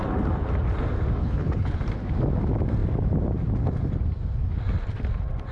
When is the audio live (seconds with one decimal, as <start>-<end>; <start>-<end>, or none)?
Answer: 0.0-1.2; 1.8-5.5